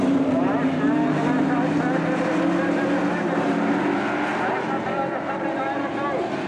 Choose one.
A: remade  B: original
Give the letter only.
B